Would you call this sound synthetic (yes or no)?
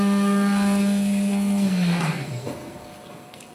yes